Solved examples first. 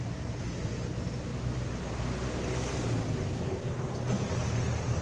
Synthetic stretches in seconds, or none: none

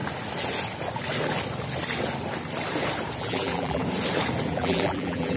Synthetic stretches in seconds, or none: 3.2-3.8 (vocoder, BigVGAN v2); 4.5-5.4

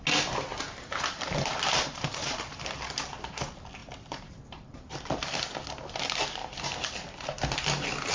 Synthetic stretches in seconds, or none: 0.5-2.6 (vocoder, BigVGAN v2); 3.8-5.2